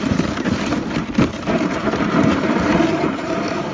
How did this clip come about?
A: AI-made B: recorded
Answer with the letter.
A